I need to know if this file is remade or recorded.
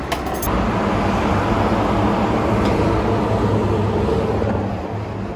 recorded